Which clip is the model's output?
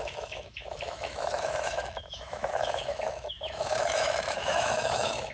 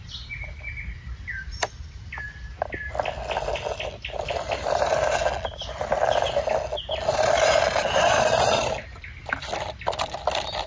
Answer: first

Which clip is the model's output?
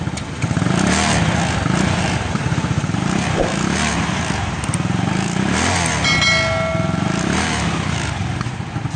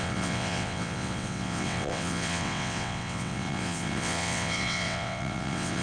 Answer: second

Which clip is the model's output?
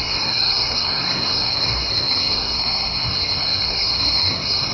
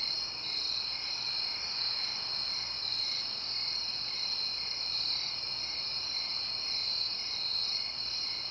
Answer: first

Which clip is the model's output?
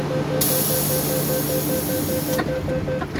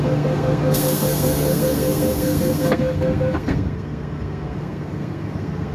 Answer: second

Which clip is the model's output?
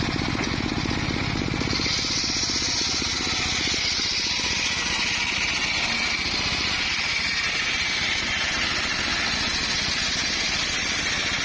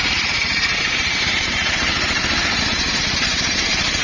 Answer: second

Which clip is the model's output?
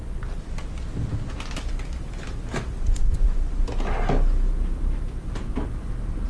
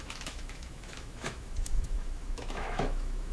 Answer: second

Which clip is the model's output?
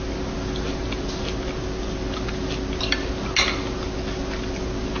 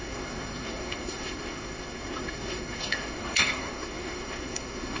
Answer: second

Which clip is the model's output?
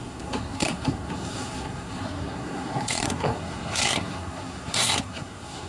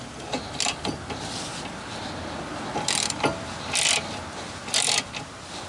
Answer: first